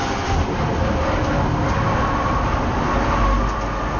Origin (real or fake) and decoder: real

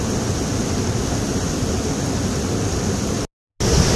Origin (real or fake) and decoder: real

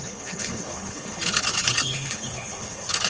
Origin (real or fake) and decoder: fake, codec, HILCodec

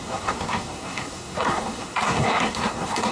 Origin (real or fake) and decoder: fake, codec, SNAC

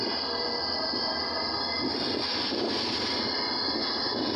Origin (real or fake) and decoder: real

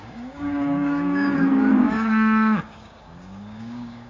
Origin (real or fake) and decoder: fake, codec, DAC